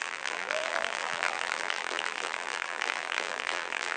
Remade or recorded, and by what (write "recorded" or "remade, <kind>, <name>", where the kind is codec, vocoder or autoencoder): remade, vocoder, BigVGAN v2